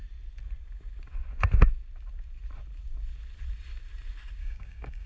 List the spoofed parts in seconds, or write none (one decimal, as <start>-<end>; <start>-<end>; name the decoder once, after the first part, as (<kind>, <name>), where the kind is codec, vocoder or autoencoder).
4.4-5.1 (codec, DAC)